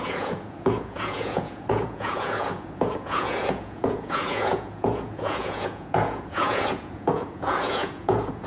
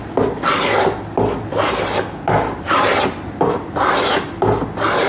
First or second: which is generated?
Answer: first